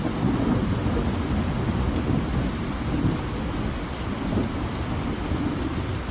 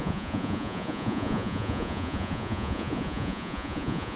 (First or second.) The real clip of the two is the first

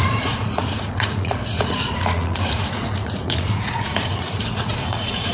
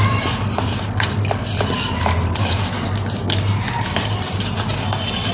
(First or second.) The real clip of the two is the second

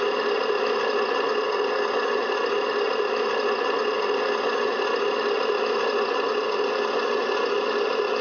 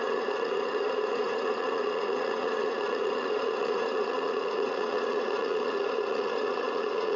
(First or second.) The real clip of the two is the first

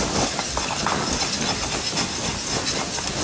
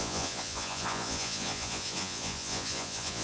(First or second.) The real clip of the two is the first